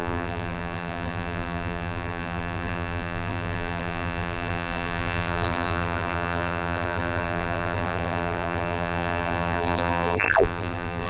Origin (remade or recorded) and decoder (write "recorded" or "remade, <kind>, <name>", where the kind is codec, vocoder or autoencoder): remade, vocoder, BigVGAN v2